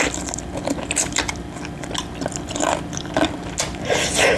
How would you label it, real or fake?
real